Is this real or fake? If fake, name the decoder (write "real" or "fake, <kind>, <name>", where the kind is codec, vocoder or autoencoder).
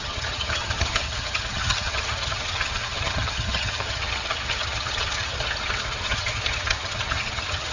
fake, vocoder, HiFi-GAN